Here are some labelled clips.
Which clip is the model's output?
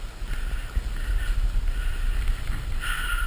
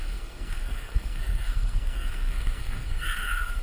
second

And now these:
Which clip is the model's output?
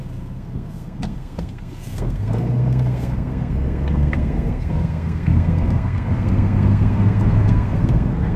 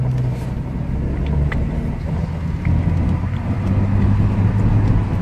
first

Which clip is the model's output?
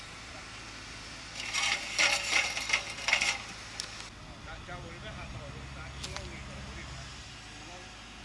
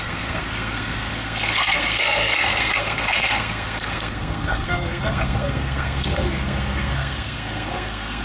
second